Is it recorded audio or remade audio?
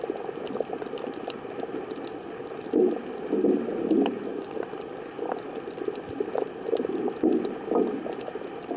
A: recorded